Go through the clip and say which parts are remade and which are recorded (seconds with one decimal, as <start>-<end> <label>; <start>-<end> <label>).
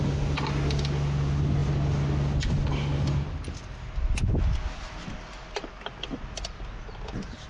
0.0-7.5 recorded